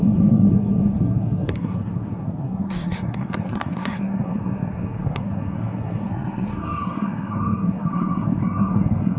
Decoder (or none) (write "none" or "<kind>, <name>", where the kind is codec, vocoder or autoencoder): codec, SNAC